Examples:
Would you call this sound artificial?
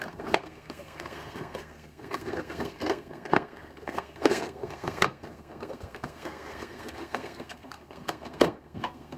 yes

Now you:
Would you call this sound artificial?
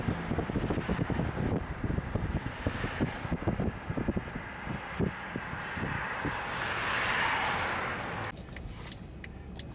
no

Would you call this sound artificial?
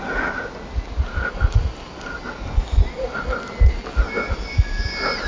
no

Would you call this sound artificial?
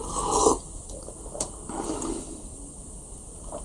no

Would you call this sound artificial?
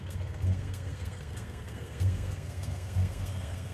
yes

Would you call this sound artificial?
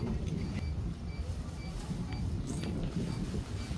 no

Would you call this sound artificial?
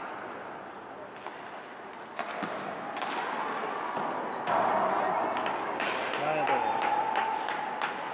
no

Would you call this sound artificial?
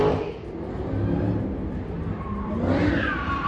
no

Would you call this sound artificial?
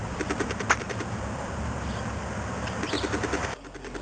no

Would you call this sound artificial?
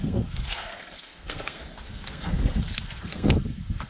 yes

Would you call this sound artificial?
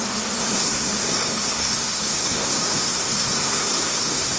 yes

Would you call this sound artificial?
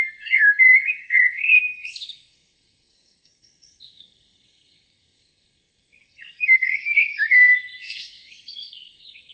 yes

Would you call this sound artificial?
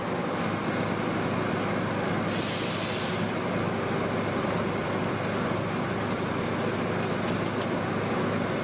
no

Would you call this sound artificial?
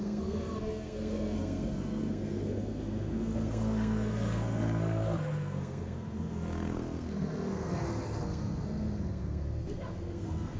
yes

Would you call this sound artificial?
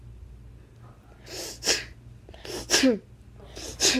no